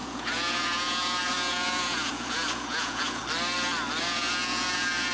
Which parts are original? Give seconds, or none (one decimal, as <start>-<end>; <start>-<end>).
3.2-4.0